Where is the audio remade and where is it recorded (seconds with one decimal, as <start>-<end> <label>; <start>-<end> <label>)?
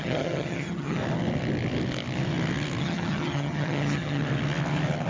0.0-1.0 remade; 1.0-2.8 recorded; 2.8-4.2 remade; 4.2-5.1 recorded